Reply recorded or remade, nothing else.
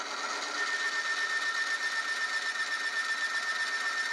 recorded